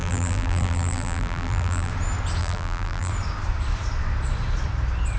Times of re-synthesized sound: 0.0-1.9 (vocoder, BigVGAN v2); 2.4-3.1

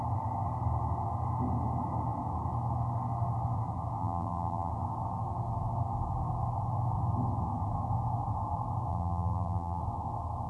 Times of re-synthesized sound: 4.0-4.7 (vocoder, BigVGAN v2); 8.9-9.8

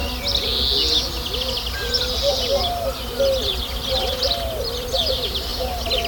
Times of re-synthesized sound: 2.3-5.5 (vocoder, BigVGAN v2)